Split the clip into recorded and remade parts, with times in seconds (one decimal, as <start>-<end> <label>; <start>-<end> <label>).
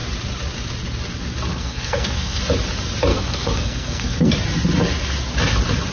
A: 0.0-1.5 recorded; 1.5-2.4 remade; 2.4-3.1 recorded; 3.1-4.3 remade; 4.3-5.9 recorded